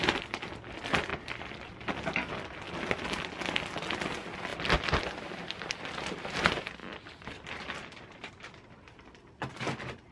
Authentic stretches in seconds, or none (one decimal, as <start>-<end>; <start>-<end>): 0.0-1.1; 1.8-4.5; 5.0-10.1